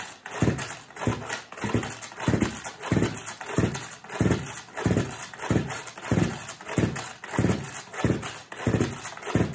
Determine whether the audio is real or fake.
real